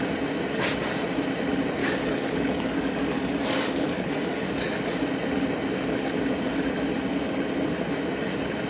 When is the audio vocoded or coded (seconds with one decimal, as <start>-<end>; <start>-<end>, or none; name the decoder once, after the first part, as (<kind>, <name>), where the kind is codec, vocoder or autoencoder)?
1.8-4.4 (codec, DAC)